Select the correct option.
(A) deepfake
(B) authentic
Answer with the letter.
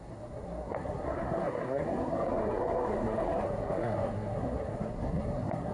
A